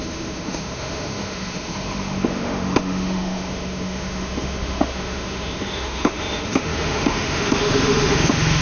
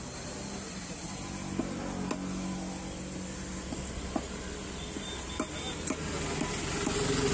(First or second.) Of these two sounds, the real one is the second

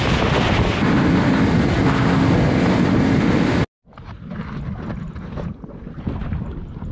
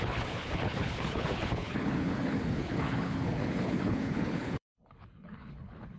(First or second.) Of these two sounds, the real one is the first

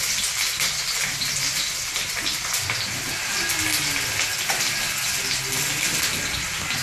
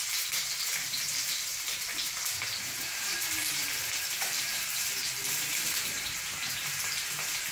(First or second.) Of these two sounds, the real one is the first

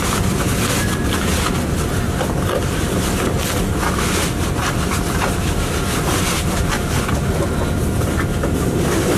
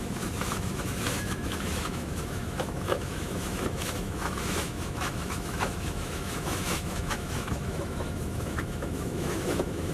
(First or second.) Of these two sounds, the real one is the first